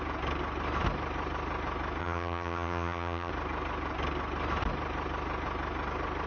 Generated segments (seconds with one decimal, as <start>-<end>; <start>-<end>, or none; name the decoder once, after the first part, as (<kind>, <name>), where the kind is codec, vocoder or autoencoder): 2.0-3.3 (vocoder, HiFi-GAN)